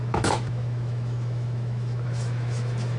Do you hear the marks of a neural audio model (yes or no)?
yes